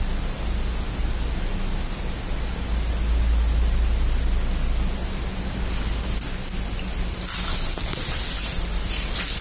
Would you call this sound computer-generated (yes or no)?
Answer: no